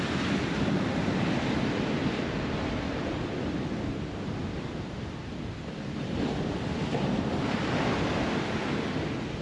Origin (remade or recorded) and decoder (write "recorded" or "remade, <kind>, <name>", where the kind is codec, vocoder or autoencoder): recorded